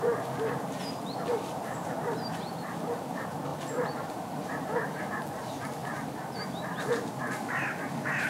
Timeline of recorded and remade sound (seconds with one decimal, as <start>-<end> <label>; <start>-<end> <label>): 0.0-8.3 recorded